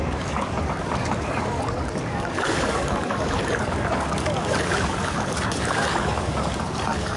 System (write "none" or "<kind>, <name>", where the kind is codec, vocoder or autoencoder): codec, DAC